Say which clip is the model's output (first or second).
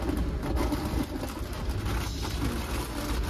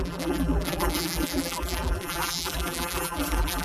second